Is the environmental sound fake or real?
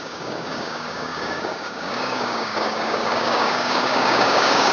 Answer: fake